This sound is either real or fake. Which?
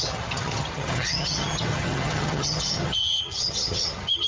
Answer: fake